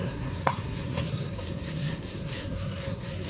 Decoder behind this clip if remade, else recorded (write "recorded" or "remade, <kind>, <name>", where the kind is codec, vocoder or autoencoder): remade, codec, SNAC